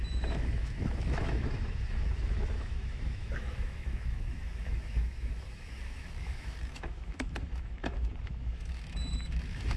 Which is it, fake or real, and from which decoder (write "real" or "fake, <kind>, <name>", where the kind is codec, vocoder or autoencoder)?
fake, autoencoder, DAC-VAE